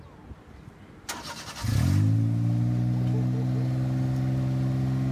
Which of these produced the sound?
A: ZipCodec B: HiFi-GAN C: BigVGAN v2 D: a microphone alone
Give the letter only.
D